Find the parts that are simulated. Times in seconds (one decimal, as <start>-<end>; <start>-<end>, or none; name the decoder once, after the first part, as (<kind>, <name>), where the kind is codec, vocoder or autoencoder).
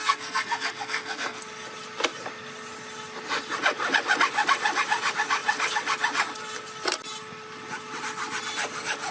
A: 0.0-1.4 (codec, SNAC)